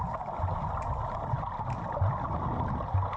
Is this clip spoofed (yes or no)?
no